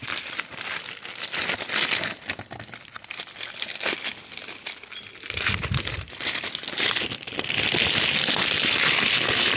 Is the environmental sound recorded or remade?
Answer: remade